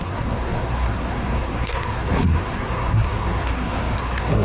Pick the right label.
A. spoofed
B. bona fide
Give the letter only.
A